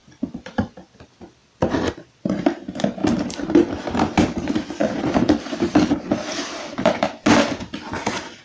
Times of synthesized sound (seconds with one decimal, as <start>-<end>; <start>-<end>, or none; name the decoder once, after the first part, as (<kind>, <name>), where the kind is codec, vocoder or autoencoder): 0.0-0.7 (vocoder, BigVGAN v2); 3.0-3.7; 4.8-7.2